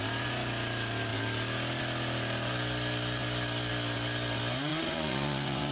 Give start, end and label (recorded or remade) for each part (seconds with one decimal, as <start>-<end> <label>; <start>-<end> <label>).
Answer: 0.0-4.7 recorded; 4.7-5.7 remade